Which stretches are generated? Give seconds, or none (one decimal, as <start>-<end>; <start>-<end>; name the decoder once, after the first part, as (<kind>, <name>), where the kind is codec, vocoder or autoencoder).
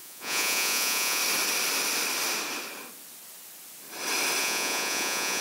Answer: 0.0-1.2 (vocoder, Vocos); 4.4-5.4